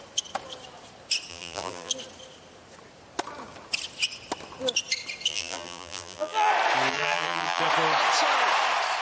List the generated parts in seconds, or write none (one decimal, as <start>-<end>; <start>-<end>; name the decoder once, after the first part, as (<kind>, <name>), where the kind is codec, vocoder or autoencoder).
1.3-1.9 (vocoder, BigVGAN v2); 5.3-6.5; 6.9-7.6